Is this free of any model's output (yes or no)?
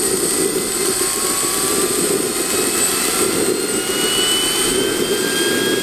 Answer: yes